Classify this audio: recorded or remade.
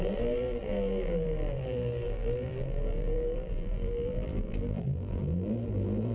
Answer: remade